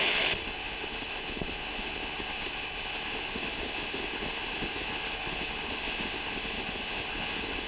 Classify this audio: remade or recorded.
remade